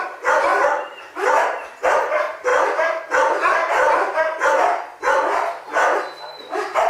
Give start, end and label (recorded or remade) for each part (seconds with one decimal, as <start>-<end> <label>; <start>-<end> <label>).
0.0-2.5 remade; 2.5-6.4 recorded; 6.4-6.9 remade